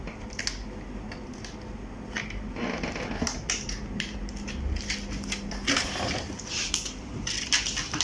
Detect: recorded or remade recorded